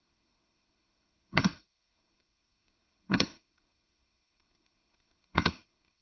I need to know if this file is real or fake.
fake